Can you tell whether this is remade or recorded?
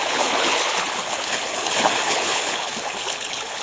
remade